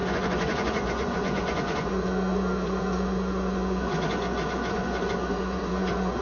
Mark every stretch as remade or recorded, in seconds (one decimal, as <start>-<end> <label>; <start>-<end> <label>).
0.0-6.2 remade